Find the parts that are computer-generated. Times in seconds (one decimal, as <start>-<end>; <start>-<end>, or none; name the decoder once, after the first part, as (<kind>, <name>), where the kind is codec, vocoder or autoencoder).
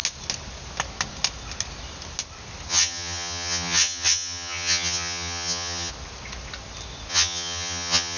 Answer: 2.7-5.9 (vocoder, HiFi-GAN); 7.1-8.2